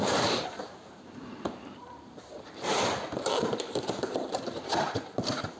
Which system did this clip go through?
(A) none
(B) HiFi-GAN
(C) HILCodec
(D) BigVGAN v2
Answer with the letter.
D